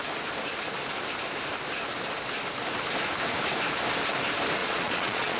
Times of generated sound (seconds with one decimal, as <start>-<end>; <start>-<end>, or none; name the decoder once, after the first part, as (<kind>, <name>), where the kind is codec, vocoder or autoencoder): 4.6-5.4 (vocoder, Vocos)